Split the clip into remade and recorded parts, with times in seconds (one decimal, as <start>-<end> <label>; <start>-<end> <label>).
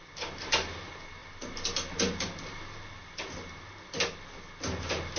0.0-5.2 recorded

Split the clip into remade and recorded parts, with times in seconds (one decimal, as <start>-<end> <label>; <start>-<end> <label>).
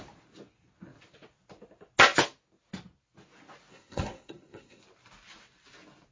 0.0-3.7 recorded; 3.7-4.8 remade; 4.8-6.1 recorded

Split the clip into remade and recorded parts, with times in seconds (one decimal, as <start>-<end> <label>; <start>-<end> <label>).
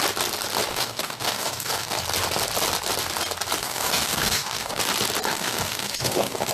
0.0-0.7 recorded; 0.7-2.0 remade; 2.0-3.6 recorded; 3.6-4.8 remade; 4.8-5.3 recorded; 5.3-6.5 remade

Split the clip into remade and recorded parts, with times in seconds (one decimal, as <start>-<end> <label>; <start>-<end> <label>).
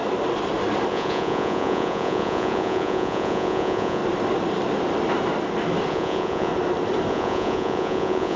0.0-0.9 recorded; 0.9-4.0 remade; 4.0-5.9 recorded; 5.9-6.5 remade; 6.5-7.1 recorded; 7.1-8.4 remade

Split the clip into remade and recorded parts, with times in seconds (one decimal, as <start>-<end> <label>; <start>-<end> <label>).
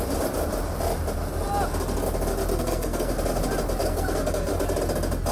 0.0-2.5 recorded; 2.5-3.1 remade; 3.1-3.8 recorded; 3.8-4.5 remade; 4.5-5.3 recorded